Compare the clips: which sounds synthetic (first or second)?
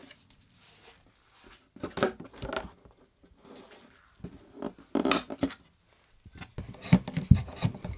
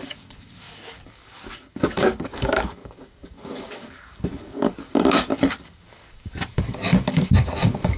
second